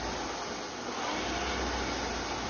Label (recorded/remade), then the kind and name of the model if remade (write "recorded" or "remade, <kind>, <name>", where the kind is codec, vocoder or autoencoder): recorded